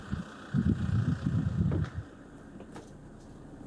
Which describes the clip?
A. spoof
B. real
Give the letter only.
B